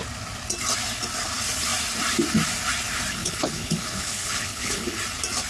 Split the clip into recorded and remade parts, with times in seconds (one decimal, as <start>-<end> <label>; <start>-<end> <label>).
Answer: 0.0-3.2 recorded; 3.2-5.0 remade; 5.0-5.5 recorded